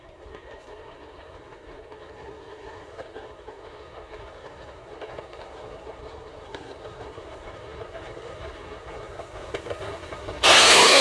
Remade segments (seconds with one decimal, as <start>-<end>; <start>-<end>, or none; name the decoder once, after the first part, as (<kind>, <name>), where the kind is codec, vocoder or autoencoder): 0.0-11.0 (codec, SNAC)